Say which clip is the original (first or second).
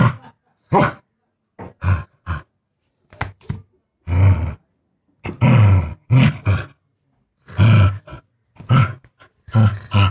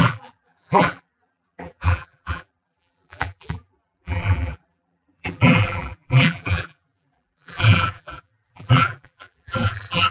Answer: first